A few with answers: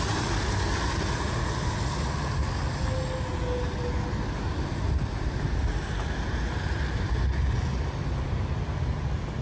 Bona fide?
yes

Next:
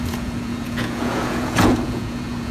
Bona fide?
no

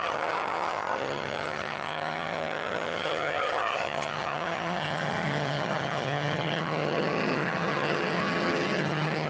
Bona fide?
no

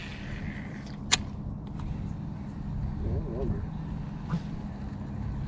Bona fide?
yes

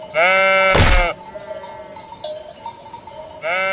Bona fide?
yes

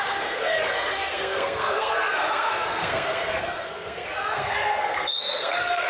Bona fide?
no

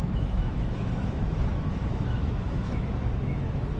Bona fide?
no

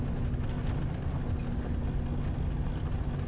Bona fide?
yes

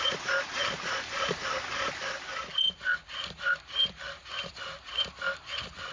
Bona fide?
yes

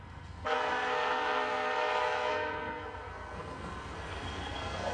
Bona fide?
no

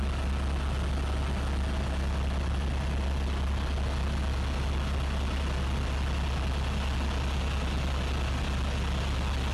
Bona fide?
yes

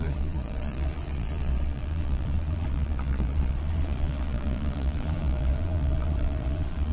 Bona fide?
no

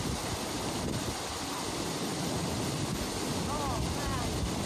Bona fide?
yes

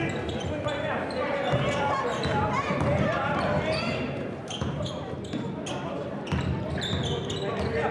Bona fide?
yes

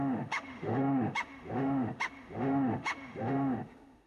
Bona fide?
no